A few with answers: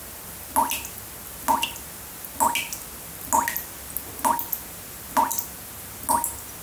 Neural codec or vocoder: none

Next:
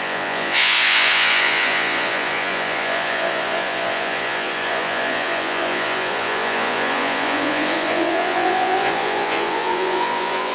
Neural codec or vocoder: vocoder, Vocos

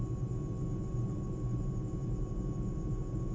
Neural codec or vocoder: none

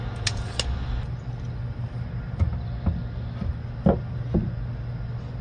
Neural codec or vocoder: none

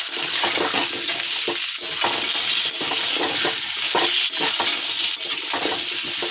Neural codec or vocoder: none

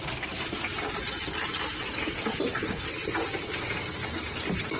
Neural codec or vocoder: none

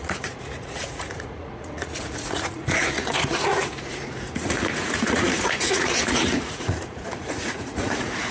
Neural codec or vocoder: vocoder, Vocos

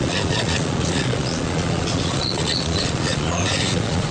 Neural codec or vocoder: vocoder, Vocos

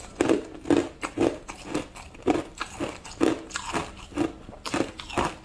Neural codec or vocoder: none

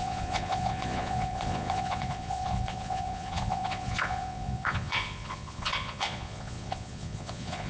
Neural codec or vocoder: vocoder, Vocos